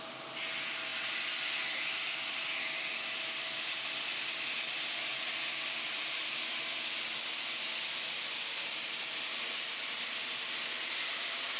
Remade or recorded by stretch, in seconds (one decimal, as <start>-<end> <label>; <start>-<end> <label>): 0.0-11.6 recorded